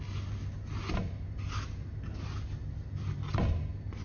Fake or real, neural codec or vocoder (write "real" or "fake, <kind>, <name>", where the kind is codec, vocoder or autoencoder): real